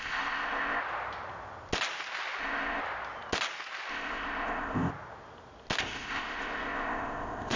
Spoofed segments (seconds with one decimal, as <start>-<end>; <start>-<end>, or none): 0.0-0.8; 2.4-2.8; 3.9-4.9; 5.8-7.6